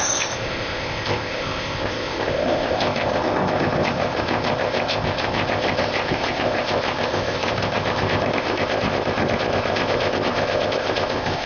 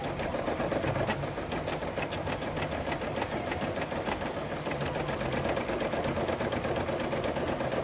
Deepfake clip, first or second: first